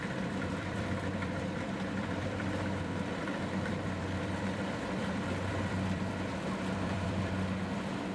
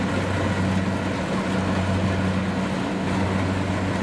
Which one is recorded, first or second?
second